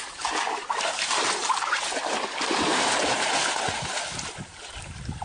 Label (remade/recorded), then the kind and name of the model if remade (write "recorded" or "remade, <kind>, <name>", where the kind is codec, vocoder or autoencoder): recorded